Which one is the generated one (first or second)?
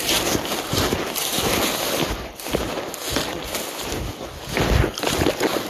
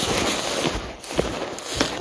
first